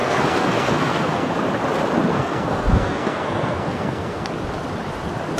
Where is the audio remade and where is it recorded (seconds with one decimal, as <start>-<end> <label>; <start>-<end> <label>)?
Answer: 0.0-1.3 remade; 1.3-2.1 recorded; 2.1-4.3 remade; 4.3-5.4 recorded